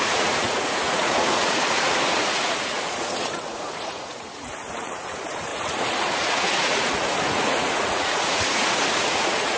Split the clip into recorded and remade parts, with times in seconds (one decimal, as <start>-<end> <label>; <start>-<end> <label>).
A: 0.0-9.6 remade